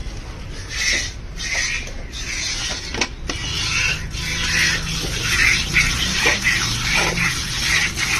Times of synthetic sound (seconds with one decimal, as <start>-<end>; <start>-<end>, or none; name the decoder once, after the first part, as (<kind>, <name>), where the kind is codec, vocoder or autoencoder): 6.3-7.4 (vocoder, BigVGAN v2)